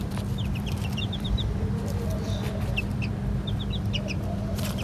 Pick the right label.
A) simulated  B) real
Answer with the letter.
A